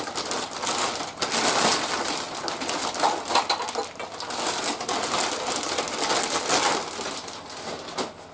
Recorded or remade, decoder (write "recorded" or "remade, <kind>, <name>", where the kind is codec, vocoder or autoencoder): recorded